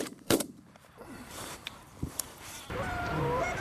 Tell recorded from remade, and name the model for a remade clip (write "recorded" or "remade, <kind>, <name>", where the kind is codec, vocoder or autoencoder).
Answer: remade, vocoder, BigVGAN v2